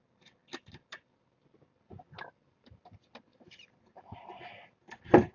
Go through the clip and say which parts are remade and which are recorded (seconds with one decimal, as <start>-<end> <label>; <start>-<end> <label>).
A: 0.0-5.3 recorded